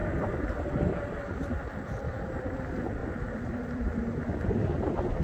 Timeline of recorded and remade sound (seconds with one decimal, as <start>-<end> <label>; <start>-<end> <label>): 0.0-5.2 remade